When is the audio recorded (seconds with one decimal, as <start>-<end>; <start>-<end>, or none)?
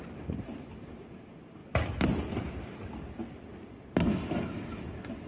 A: 0.0-5.3